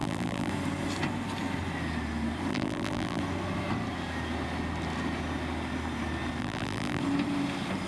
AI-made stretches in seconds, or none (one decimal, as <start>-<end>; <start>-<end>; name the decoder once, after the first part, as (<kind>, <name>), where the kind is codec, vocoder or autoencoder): 0.0-0.5 (vocoder, BigVGAN v2); 2.5-3.2; 6.4-7.0